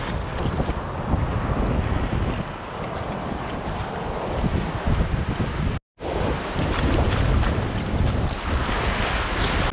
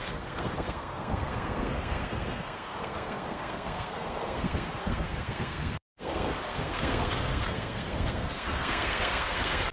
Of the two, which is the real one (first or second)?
first